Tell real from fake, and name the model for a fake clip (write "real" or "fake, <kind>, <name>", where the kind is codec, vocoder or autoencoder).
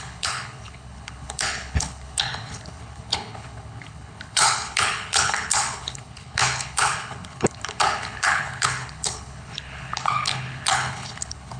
fake, codec, HILCodec